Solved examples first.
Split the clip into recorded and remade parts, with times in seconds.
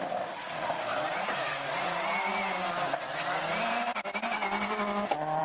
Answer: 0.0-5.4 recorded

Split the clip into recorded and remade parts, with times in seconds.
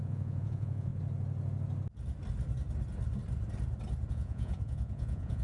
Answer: 0.0-0.9 remade; 0.9-4.1 recorded; 4.1-5.4 remade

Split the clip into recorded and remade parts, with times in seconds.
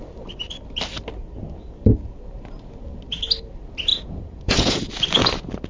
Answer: 0.0-3.9 recorded; 3.9-4.9 remade; 4.9-5.7 recorded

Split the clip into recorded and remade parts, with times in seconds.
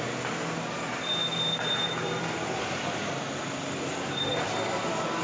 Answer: 0.0-5.2 recorded